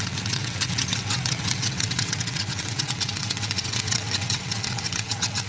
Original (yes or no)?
no